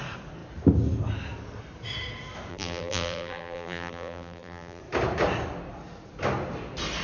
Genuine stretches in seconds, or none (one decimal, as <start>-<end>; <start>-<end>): 0.0-2.5; 4.8-7.0